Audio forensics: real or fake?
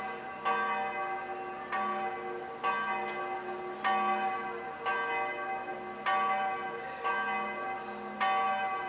real